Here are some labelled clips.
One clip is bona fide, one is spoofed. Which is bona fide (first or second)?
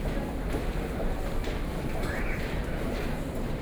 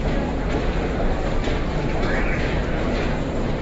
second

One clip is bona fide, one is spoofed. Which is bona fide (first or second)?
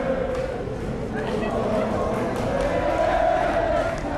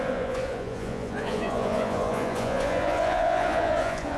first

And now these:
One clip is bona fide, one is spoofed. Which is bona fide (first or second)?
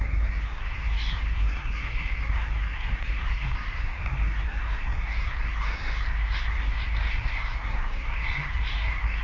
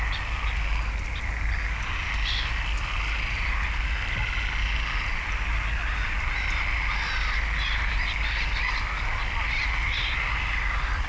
second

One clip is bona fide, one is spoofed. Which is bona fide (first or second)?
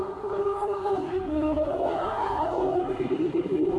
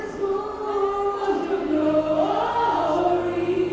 second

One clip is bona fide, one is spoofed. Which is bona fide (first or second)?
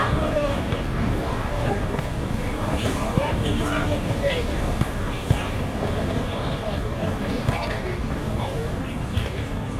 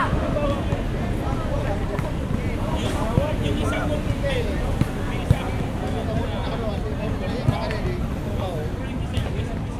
second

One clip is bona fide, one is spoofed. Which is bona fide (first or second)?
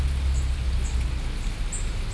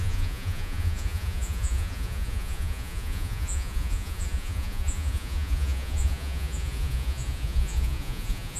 first